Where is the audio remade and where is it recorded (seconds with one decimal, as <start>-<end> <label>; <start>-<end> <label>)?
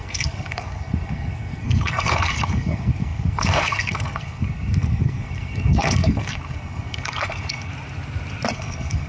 0.0-7.7 remade; 7.7-8.5 recorded; 8.5-9.1 remade